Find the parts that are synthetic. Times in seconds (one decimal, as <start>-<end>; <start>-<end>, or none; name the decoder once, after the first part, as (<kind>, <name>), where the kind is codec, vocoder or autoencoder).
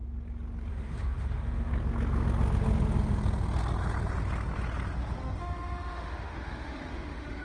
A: 0.7-1.7 (autoencoder, DAC-VAE); 5.4-7.4